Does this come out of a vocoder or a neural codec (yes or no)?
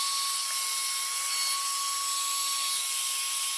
no